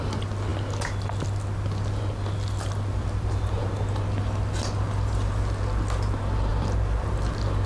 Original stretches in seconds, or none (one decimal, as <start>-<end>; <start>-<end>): 0.0-7.7